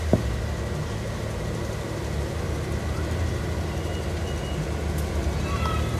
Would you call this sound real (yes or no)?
yes